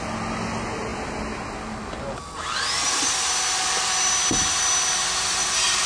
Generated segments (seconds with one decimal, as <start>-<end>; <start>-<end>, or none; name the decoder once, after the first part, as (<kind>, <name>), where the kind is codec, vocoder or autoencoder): none